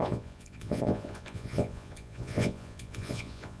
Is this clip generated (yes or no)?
yes